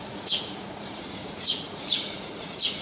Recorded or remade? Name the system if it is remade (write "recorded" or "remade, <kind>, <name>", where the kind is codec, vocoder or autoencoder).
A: remade, vocoder, Vocos